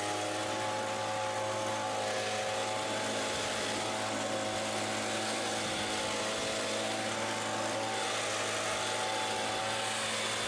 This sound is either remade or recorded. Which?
recorded